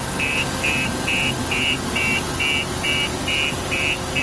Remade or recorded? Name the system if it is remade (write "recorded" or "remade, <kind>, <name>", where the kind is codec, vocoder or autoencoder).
recorded